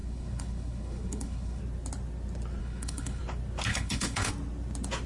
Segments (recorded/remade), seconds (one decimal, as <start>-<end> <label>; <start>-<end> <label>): 0.0-1.6 remade; 1.6-2.6 recorded; 2.6-3.2 remade; 3.2-3.7 recorded; 3.7-4.3 remade; 4.3-5.1 recorded